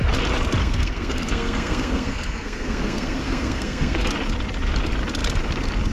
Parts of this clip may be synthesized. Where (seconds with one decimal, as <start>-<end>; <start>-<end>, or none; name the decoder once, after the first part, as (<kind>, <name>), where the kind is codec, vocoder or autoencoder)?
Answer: 0.6-4.1 (codec, SNAC)